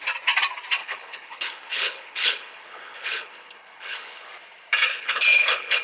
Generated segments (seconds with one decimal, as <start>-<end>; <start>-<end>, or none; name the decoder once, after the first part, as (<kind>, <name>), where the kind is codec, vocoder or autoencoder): 0.8-4.3 (codec, HILCodec); 4.9-5.8